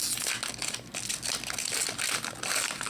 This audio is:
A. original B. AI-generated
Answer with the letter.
A